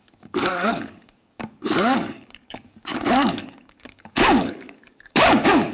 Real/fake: fake